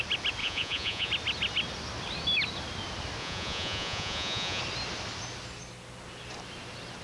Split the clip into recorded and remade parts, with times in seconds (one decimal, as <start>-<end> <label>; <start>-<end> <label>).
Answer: 0.0-0.4 recorded; 0.4-1.1 remade; 1.1-3.2 recorded; 3.2-4.6 remade; 4.6-7.0 recorded